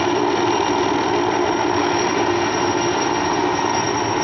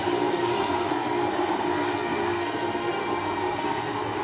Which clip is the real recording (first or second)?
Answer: first